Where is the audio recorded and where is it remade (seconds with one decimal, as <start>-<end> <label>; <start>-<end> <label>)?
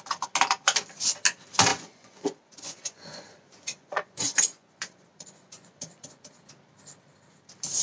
0.0-1.7 recorded; 1.7-6.3 remade; 6.3-7.8 recorded